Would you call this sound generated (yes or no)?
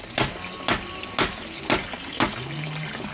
no